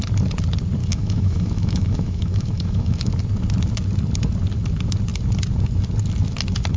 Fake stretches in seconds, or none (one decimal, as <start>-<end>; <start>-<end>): 0.8-3.1